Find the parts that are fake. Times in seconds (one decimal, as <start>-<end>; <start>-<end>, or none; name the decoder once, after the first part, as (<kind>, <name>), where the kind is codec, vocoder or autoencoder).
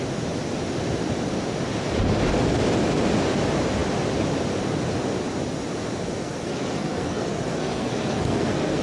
6.2-8.8 (codec, SNAC)